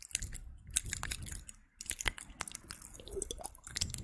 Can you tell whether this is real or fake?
real